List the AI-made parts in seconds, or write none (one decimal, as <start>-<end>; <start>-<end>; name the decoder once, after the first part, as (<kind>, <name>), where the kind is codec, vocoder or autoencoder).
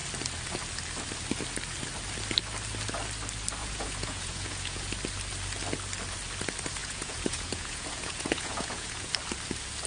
3.6-4.9 (vocoder, Vocos); 6.8-9.1